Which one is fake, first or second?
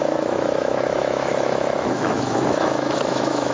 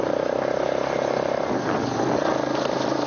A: first